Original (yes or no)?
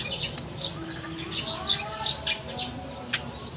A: yes